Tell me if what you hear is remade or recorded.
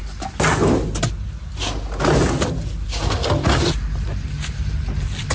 recorded